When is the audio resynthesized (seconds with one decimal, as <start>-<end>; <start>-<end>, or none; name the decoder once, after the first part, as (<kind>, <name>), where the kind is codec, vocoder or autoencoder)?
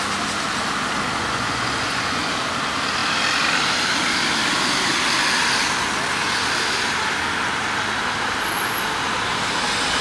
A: 1.2-2.3 (vocoder, Vocos)